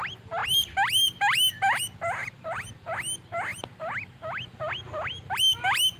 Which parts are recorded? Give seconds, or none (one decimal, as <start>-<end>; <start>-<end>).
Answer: 0.0-6.0